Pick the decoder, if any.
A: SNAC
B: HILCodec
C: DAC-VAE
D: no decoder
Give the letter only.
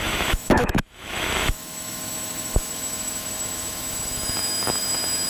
C